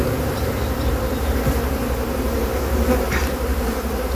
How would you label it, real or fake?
real